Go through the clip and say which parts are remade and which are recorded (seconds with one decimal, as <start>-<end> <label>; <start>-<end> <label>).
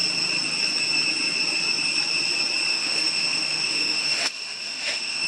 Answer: 0.0-2.7 recorded; 2.7-5.3 remade